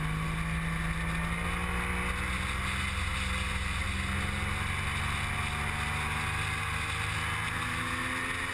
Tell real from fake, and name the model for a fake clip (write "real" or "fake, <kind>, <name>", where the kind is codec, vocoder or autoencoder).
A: real